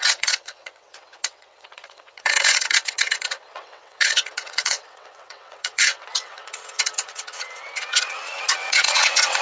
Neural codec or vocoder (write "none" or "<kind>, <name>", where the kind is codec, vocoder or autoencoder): vocoder, WaveNeXt